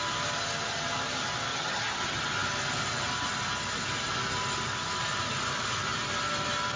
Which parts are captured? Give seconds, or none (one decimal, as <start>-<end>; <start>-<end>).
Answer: 0.0-1.5; 2.2-6.8